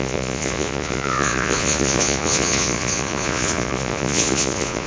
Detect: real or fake fake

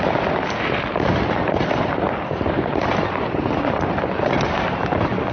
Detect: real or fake real